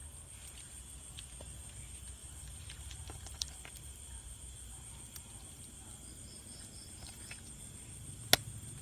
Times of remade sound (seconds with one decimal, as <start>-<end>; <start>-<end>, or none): 2.2-7.3